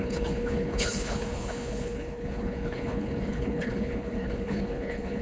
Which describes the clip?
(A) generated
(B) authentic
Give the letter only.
A